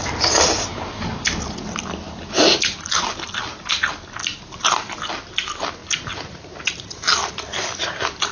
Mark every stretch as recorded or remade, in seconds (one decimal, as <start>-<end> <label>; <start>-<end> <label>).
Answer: 0.0-8.3 recorded